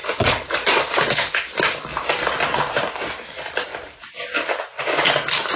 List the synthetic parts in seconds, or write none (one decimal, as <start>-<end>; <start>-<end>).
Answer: 0.0-1.1